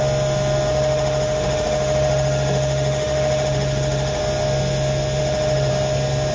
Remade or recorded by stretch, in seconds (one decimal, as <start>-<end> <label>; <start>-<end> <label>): 0.0-0.7 recorded; 0.7-4.2 remade; 4.2-5.2 recorded; 5.2-5.7 remade; 5.7-6.3 recorded